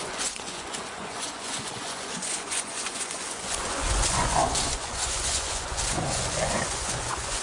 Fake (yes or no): yes